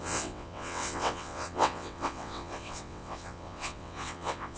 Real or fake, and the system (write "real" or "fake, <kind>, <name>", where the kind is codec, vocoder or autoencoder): fake, vocoder, WaveNeXt